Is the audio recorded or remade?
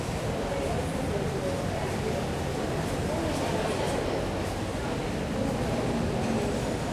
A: recorded